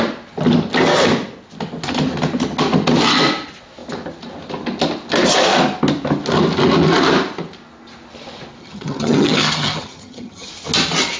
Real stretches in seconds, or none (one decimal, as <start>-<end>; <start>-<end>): 0.0-8.6; 10.5-11.2